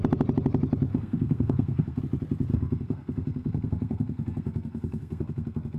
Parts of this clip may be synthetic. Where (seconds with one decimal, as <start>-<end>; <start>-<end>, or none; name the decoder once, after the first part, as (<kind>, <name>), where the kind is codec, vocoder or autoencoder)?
0.9-2.0 (codec, SNAC); 2.5-5.8